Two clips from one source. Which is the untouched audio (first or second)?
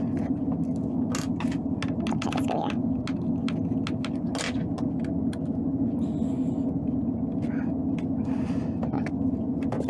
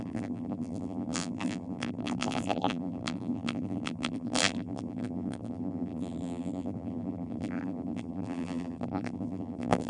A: first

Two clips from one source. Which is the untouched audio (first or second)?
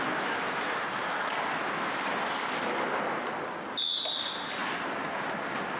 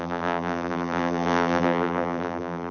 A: first